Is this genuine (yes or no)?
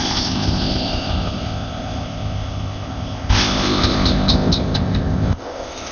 no